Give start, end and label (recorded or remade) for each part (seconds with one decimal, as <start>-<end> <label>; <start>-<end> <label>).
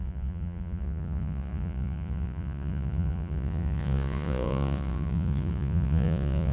0.0-6.5 remade